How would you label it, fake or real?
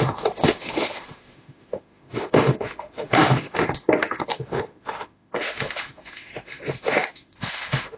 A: fake